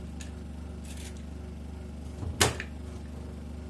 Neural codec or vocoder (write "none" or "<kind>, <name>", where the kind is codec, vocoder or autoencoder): none